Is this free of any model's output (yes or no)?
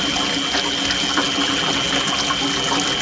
yes